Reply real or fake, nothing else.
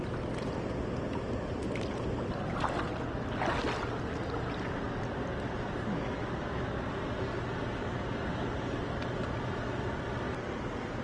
real